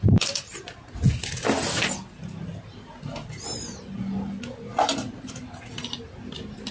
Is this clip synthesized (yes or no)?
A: no